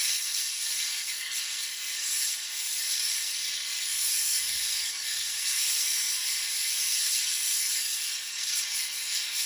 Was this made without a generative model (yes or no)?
no